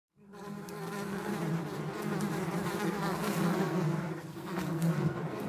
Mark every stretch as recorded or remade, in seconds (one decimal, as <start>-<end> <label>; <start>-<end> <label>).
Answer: 0.0-1.3 remade; 1.3-2.8 recorded; 2.8-5.5 remade